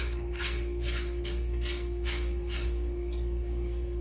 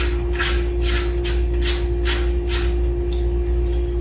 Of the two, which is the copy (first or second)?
first